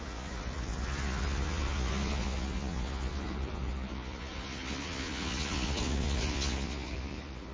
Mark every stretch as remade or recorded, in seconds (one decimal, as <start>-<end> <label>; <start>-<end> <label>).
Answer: 0.0-7.5 remade